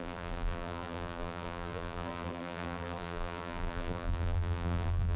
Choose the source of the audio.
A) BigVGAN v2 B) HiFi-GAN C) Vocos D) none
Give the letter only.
A